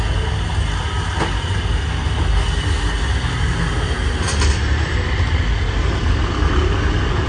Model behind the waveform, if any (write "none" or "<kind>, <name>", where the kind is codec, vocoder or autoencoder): none